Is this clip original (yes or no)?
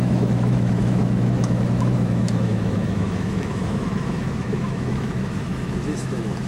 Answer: no